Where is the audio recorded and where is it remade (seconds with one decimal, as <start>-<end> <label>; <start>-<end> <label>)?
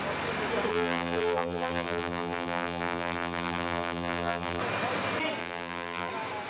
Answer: 0.0-0.7 recorded; 0.7-4.6 remade; 4.6-5.4 recorded; 5.4-6.1 remade; 6.1-6.5 recorded